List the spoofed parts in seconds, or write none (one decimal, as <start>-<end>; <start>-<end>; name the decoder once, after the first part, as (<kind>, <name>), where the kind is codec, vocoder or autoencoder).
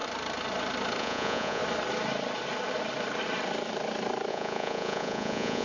1.0-1.6 (vocoder, Vocos); 4.3-5.6